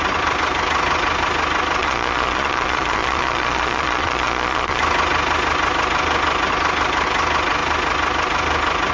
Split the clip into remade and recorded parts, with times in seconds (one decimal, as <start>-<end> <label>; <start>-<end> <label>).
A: 0.0-1.8 recorded; 1.8-4.8 remade; 4.8-8.9 recorded